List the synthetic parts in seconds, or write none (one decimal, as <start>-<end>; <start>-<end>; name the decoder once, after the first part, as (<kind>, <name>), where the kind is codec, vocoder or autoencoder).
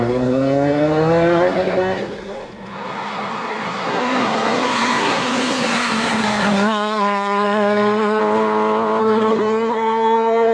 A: 0.0-8.2 (codec, SNAC); 9.0-10.5